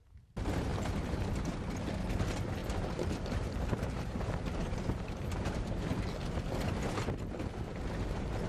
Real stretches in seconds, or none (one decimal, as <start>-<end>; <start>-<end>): 0.0-2.6; 6.1-8.5